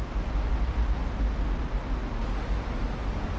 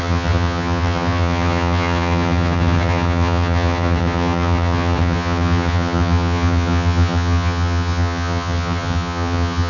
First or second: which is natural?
first